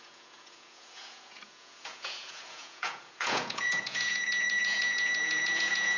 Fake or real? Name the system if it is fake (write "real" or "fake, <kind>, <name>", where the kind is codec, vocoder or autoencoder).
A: fake, vocoder, Vocos